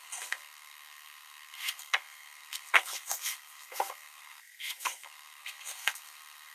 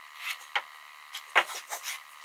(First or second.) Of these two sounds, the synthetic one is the first